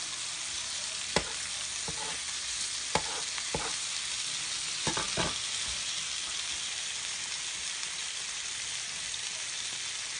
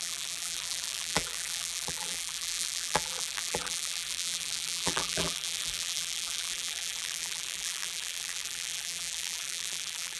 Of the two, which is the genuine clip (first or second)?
first